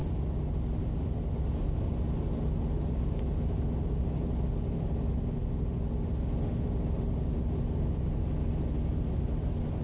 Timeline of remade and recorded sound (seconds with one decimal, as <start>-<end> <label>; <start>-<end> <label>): 0.0-9.8 recorded